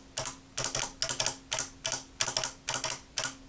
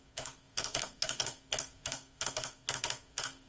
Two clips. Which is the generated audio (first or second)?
second